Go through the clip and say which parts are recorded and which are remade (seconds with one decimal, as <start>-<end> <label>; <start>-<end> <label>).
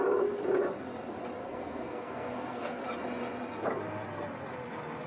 0.0-1.4 recorded; 1.4-2.8 remade; 2.8-5.1 recorded